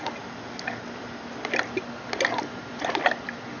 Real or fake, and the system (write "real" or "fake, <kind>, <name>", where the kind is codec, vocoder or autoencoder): real